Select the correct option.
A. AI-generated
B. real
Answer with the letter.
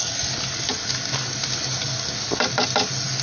B